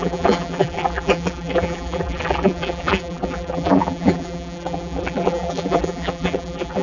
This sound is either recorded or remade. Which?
remade